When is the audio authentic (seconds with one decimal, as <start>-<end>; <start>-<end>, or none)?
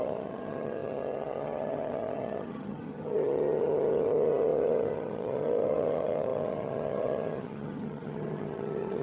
none